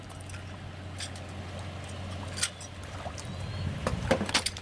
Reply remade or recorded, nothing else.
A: recorded